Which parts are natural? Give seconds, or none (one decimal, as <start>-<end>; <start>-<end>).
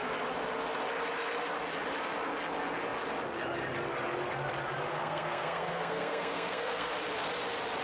0.0-4.9; 6.9-7.8